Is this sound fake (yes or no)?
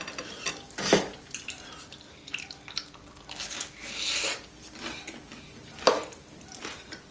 no